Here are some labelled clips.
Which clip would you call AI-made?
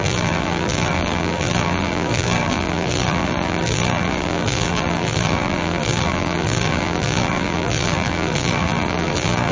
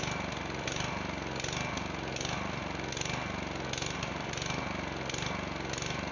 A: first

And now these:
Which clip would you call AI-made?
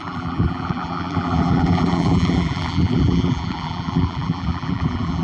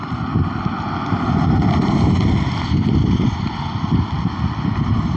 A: first